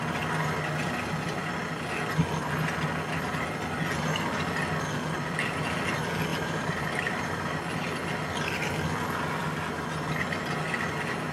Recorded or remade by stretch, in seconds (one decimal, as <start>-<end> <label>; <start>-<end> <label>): 0.0-6.3 recorded; 6.3-7.6 remade; 7.6-11.3 recorded